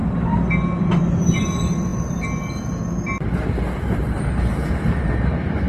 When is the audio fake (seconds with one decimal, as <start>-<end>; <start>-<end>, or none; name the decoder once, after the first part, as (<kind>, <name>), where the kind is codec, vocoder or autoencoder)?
none